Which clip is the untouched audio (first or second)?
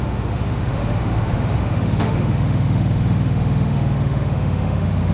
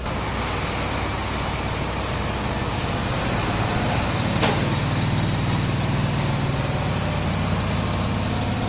second